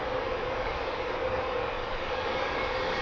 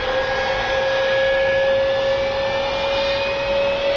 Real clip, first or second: second